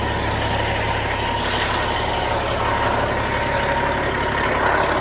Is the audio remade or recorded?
recorded